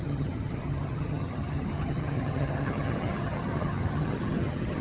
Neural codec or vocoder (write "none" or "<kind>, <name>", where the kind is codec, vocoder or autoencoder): vocoder, HiFi-GAN